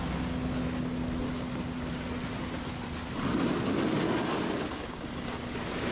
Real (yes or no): yes